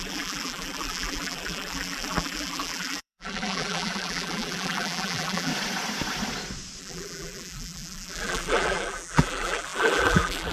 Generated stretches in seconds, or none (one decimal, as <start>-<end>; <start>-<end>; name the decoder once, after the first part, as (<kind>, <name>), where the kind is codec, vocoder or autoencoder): 0.0-5.5 (vocoder, BigVGAN v2); 6.8-10.5